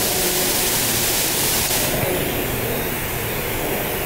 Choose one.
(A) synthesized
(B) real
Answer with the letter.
B